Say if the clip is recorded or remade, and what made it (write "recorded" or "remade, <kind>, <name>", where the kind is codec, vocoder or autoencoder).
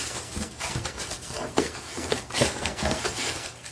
remade, codec, SNAC